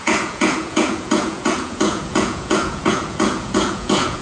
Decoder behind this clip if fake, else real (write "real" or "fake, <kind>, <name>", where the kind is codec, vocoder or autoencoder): fake, vocoder, Vocos